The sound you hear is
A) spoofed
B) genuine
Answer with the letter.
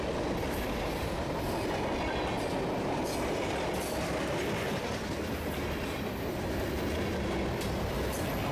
B